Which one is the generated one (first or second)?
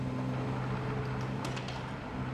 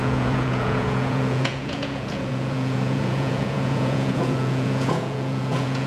second